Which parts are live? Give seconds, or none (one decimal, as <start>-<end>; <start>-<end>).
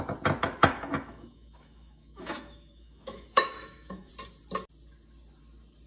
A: 0.0-0.6; 4.1-5.9